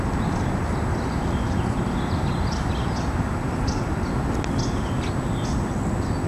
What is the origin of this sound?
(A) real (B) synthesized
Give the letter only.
A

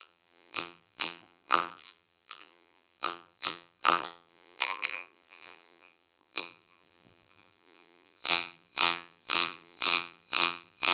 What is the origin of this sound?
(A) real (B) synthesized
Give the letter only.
B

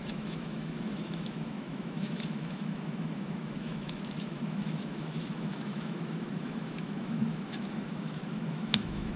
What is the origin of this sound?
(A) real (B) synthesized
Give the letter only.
B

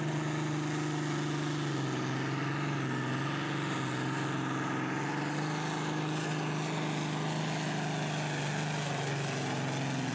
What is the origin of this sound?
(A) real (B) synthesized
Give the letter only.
A